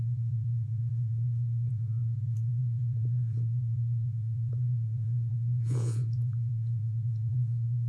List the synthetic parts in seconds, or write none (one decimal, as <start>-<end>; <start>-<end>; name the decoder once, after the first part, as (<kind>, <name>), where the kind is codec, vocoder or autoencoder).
0.0-7.9 (vocoder, Vocos)